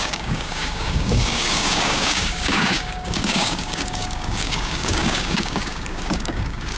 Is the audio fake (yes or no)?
yes